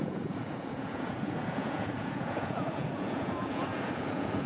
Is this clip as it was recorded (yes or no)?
no